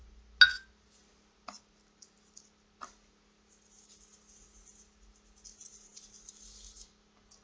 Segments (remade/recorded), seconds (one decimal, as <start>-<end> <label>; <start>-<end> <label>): 0.0-7.4 recorded